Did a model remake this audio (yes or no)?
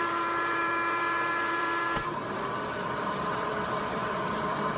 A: yes